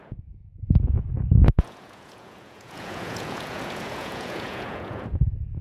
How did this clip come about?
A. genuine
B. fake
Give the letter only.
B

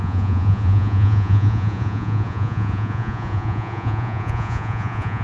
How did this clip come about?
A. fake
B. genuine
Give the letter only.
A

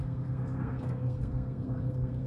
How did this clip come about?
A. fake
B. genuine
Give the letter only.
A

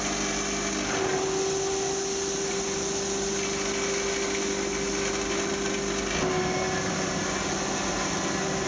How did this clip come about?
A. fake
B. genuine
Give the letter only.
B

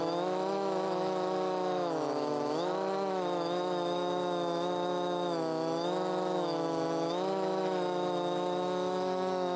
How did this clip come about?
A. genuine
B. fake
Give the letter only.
B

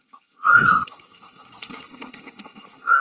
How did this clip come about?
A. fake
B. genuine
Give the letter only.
A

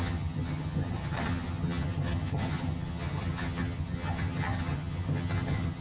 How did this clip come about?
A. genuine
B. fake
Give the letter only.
B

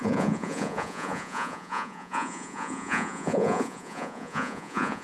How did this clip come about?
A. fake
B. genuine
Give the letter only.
A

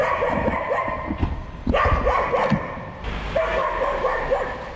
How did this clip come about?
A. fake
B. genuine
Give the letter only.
B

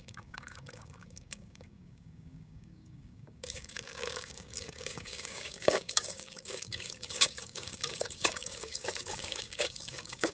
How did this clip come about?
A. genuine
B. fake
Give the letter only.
B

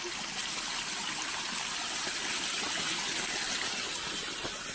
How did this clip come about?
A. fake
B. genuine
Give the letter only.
B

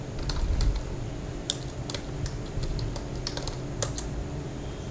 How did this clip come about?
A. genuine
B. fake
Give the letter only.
A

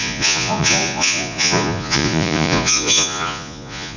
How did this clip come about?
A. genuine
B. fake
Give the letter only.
B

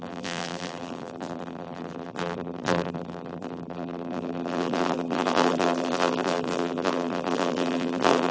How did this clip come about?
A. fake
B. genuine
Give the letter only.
A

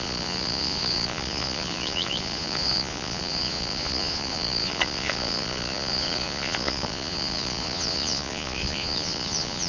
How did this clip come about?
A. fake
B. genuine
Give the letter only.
A